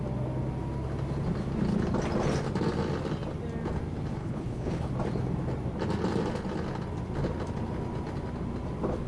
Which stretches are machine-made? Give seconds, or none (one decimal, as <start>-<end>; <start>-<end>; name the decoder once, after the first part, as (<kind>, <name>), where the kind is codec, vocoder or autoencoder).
4.2-4.9 (codec, HILCodec)